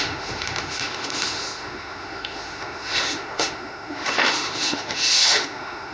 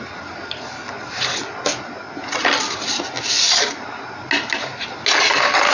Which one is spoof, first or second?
first